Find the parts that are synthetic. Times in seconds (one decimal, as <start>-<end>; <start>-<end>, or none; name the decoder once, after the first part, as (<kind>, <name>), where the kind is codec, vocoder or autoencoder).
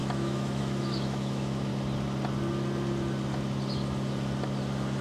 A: 0.0-1.7 (autoencoder, DAC-VAE)